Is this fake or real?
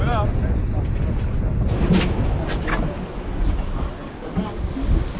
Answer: real